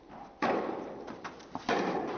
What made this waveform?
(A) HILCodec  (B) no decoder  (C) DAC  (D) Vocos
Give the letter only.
B